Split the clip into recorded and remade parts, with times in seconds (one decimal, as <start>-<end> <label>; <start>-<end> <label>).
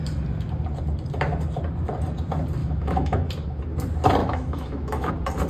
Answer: 0.0-2.6 recorded; 2.6-3.3 remade; 3.3-4.2 recorded; 4.2-5.1 remade; 5.1-5.5 recorded